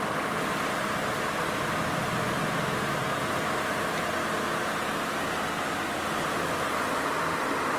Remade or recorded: recorded